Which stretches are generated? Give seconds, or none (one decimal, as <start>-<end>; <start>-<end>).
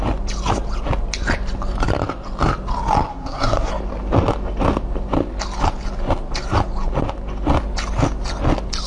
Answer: 3.1-3.7